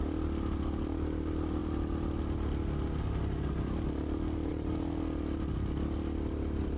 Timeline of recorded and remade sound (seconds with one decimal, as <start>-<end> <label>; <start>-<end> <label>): 0.0-6.8 recorded